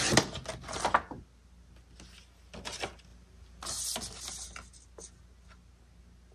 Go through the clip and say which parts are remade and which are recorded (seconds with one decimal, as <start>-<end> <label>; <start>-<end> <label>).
0.0-6.3 recorded

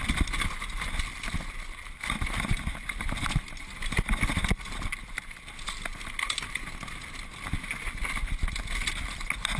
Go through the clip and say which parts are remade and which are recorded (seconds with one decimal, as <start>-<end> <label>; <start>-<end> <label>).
0.0-9.6 recorded

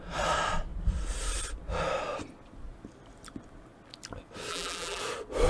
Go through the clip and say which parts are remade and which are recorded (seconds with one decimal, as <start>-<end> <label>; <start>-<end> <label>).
0.0-4.5 recorded; 4.5-5.0 remade; 5.0-5.5 recorded

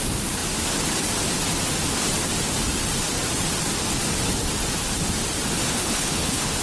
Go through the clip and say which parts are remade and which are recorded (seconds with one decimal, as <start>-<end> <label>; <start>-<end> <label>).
0.0-5.7 recorded; 5.7-6.6 remade

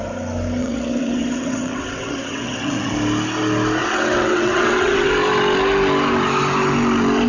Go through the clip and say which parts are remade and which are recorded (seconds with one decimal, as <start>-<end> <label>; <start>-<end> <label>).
0.0-0.6 recorded; 0.6-2.9 remade; 2.9-3.8 recorded; 3.8-5.1 remade; 5.1-7.3 recorded

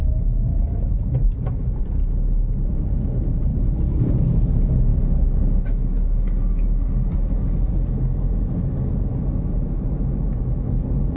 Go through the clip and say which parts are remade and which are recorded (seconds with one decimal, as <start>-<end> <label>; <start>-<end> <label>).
0.0-0.5 recorded; 0.5-1.8 remade; 1.8-3.5 recorded; 3.5-4.1 remade; 4.1-11.2 recorded